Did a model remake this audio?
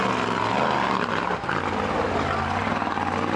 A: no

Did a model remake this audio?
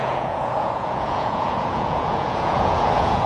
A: yes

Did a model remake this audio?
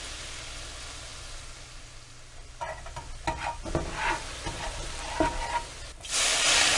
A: no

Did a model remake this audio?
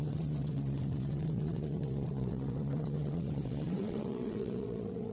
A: yes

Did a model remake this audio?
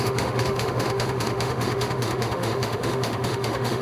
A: yes